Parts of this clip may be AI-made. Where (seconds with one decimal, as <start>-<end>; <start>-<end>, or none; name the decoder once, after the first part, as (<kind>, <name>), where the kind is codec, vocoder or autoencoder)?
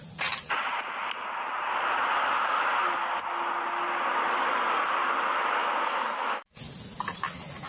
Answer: 5.6-6.5 (autoencoder, DAC-VAE)